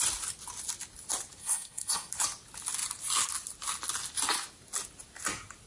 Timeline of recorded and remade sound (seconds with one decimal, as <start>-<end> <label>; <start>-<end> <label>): 0.0-1.4 recorded; 1.4-2.1 remade; 2.1-5.7 recorded